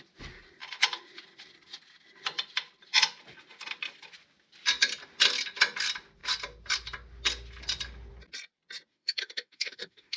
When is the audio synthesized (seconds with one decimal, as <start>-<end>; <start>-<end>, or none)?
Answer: 8.9-10.2